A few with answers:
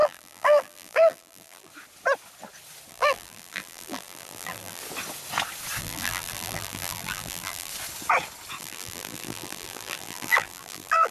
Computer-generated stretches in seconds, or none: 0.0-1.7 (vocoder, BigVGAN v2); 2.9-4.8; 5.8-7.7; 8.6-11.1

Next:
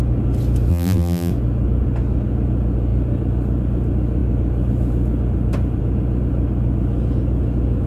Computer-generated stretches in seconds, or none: 0.7-1.3 (vocoder, BigVGAN v2)

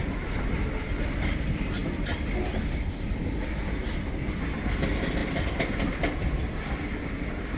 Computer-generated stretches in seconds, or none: none